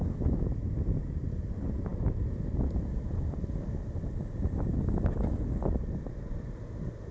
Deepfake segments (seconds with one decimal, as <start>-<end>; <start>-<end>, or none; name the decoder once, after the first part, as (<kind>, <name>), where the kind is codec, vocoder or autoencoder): none